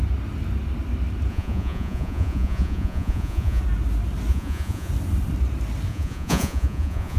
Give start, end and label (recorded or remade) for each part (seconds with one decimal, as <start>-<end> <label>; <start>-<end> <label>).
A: 0.0-1.3 recorded; 1.3-3.6 remade; 3.6-4.3 recorded; 4.3-4.9 remade; 4.9-5.9 recorded; 5.9-7.2 remade